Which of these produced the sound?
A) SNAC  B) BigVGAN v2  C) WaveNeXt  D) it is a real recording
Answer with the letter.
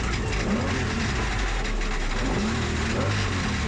D